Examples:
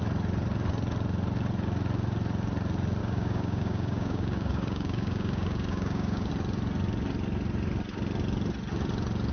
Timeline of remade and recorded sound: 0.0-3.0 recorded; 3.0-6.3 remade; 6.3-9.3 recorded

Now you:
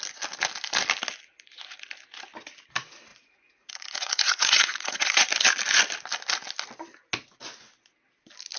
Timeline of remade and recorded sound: 0.0-3.1 recorded; 3.1-5.2 remade; 5.2-8.6 recorded

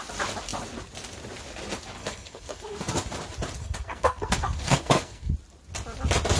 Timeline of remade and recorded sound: 0.0-2.0 recorded; 2.0-2.9 remade; 2.9-3.6 recorded; 3.6-5.3 remade; 5.3-6.4 recorded

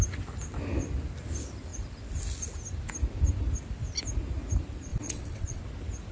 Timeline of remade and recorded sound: 0.0-4.9 recorded; 4.9-5.6 remade; 5.6-6.1 recorded

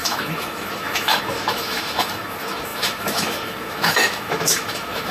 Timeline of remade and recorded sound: 0.0-5.1 remade

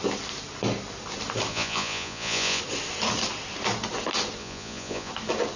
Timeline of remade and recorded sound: 0.0-1.5 recorded; 1.5-2.6 remade; 2.6-4.4 recorded; 4.4-5.1 remade; 5.1-5.6 recorded

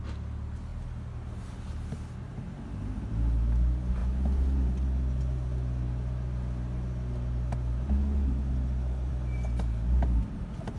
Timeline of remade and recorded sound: 0.0-10.8 recorded